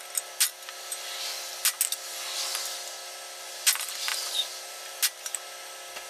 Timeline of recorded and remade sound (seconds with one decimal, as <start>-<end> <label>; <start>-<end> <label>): 0.0-6.1 recorded